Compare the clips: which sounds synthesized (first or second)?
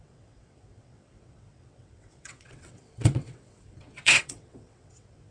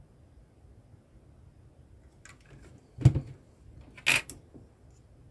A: first